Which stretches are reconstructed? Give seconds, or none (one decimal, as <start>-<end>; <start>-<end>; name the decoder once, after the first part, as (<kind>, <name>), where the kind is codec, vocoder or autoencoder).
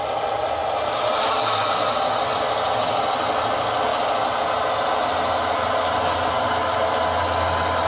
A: none